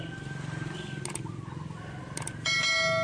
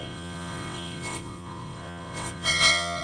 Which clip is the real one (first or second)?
first